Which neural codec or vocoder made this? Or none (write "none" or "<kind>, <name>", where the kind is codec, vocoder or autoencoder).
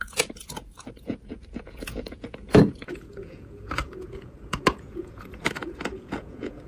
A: vocoder, Vocos